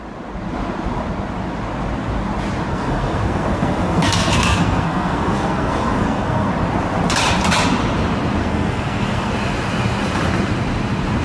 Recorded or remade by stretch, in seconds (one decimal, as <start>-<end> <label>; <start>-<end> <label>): 0.0-2.7 recorded; 2.7-6.5 remade; 6.5-8.4 recorded; 8.4-9.3 remade; 9.3-11.2 recorded